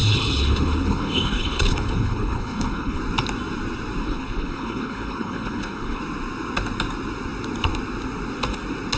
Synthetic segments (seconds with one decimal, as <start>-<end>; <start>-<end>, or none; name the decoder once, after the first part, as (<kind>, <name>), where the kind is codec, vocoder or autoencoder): 0.0-3.0 (codec, HILCodec); 4.0-6.0